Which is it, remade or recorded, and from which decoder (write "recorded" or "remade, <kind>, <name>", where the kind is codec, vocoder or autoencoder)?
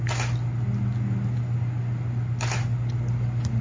recorded